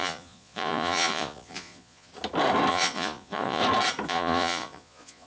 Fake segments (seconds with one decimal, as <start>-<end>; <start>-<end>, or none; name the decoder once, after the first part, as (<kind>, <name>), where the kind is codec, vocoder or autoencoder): 0.0-2.1 (vocoder, Vocos); 2.7-3.6; 4.1-5.3